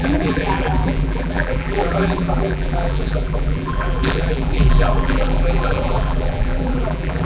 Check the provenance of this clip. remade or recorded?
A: remade